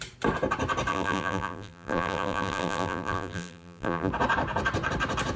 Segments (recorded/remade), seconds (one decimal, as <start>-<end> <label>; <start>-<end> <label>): 0.0-0.9 recorded; 0.9-4.1 remade; 4.1-5.4 recorded